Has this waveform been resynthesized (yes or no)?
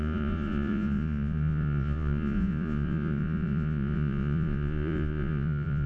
yes